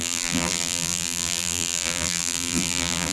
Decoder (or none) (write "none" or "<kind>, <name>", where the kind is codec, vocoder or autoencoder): vocoder, BigVGAN v2